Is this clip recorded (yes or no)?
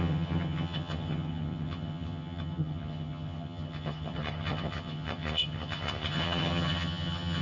no